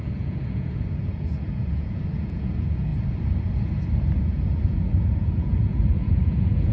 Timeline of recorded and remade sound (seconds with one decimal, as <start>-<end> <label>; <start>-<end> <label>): 0.0-2.9 remade; 2.9-4.2 recorded; 4.2-6.7 remade